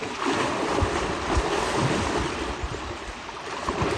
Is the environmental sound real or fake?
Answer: real